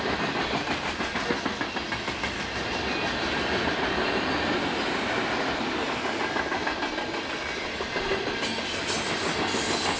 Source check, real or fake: real